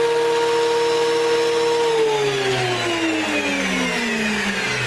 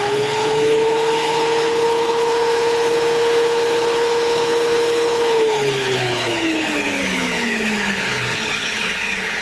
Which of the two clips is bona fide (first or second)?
first